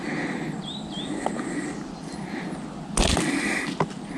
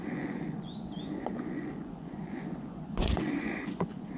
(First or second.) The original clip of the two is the first